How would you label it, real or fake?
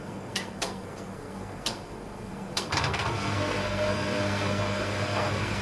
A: fake